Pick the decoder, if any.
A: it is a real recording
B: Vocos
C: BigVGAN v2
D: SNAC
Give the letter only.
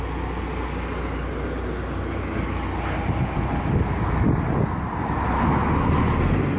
A